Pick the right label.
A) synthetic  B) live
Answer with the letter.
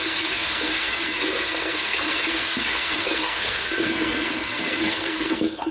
A